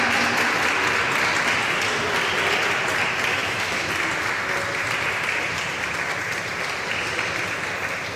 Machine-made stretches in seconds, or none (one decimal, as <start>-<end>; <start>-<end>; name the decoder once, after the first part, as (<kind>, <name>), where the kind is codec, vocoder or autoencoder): 3.3-3.9 (autoencoder, DAC-VAE)